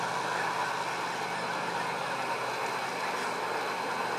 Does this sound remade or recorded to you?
recorded